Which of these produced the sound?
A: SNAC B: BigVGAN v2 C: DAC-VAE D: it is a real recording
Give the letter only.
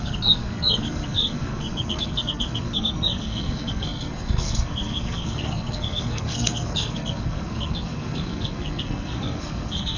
A